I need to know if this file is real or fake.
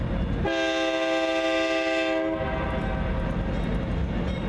real